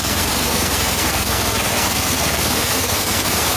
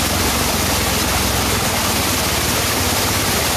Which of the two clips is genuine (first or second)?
second